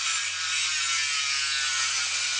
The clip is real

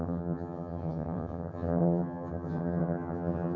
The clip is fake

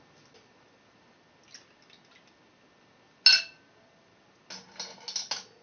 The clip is real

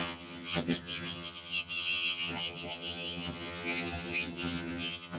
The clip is fake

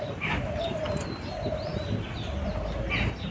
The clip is real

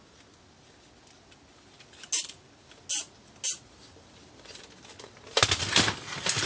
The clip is real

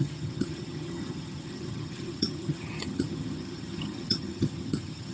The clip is fake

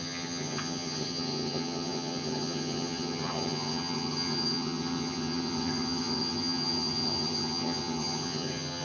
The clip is fake